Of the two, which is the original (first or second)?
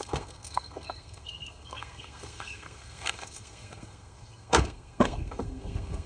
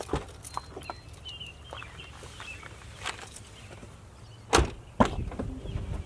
second